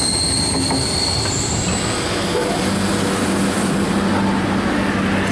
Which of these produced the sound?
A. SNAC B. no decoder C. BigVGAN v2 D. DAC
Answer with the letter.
B